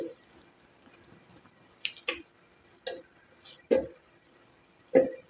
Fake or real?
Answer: real